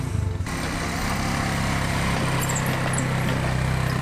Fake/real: real